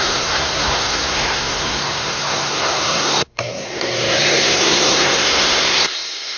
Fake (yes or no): yes